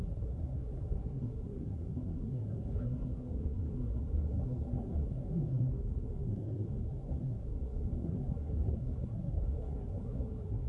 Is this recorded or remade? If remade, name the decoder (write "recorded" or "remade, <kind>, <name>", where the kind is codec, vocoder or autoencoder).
remade, codec, SNAC